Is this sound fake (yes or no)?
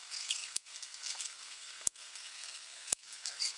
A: yes